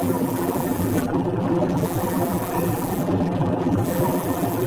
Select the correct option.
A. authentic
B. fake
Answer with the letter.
B